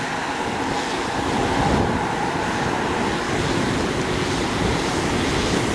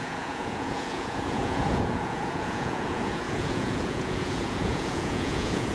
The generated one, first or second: second